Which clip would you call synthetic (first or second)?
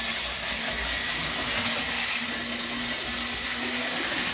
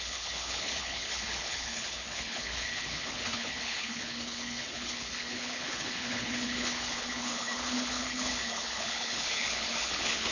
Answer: second